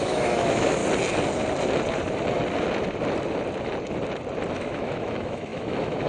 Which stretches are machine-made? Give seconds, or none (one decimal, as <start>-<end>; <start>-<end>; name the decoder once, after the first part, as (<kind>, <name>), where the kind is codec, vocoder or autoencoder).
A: 0.0-0.8 (autoencoder, DAC-VAE); 4.5-6.1